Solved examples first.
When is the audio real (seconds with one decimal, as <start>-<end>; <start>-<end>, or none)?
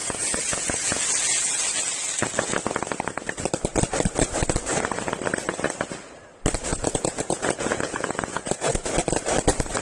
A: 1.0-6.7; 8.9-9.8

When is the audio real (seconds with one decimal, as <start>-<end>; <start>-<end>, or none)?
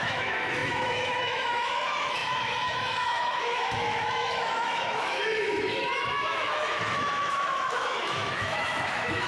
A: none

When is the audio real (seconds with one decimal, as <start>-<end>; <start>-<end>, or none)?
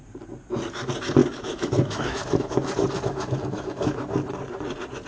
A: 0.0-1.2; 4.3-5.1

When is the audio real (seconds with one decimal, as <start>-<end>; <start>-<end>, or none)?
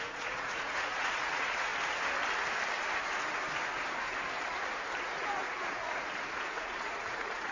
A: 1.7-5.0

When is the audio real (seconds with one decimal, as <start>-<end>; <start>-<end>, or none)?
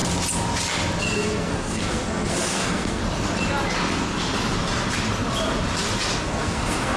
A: 0.0-1.0; 3.0-6.2